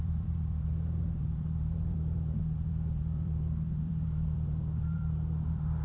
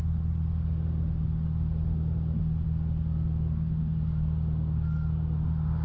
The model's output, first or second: first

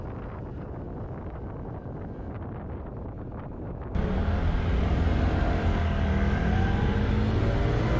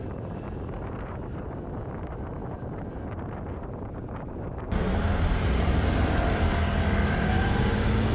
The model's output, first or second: second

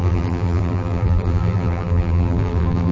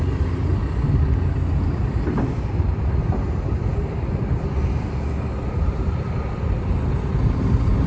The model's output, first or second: first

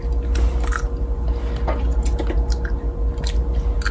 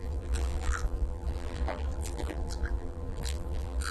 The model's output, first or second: second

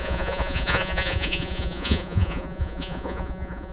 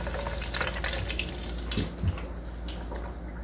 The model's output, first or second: first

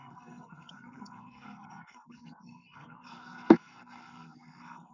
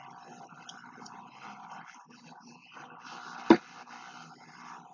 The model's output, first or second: first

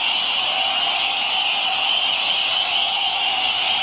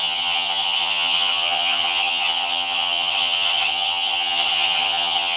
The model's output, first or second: second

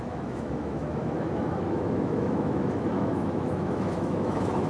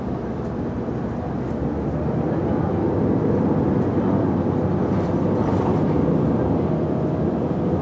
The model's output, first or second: first